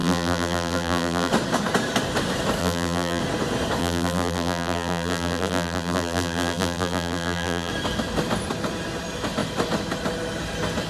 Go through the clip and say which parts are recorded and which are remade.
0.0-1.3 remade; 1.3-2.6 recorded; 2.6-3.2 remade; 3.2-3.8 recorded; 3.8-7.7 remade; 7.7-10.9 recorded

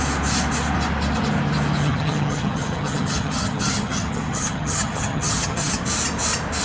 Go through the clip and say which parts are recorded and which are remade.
0.0-1.8 recorded; 1.8-5.8 remade; 5.8-6.6 recorded

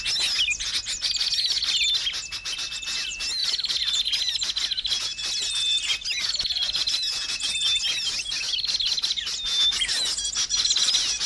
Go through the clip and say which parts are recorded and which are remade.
0.0-11.3 recorded

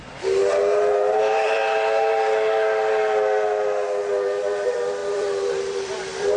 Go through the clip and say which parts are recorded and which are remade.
0.0-0.4 remade; 0.4-1.2 recorded; 1.2-1.6 remade; 1.6-4.1 recorded; 4.1-6.4 remade

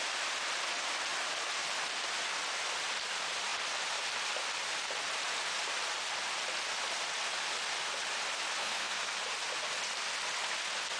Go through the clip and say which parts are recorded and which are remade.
0.0-8.6 recorded; 8.6-9.1 remade; 9.1-11.0 recorded

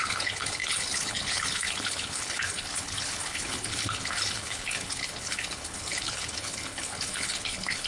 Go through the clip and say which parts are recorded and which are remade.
0.0-7.9 remade

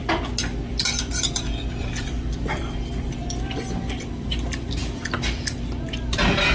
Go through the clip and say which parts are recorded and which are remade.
0.0-6.5 recorded

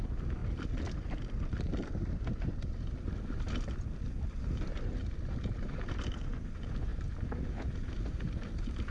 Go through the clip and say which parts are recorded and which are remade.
0.0-8.9 recorded